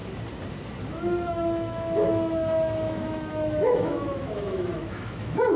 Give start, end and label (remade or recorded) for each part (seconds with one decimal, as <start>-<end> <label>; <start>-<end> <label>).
0.0-0.9 recorded; 0.9-5.6 remade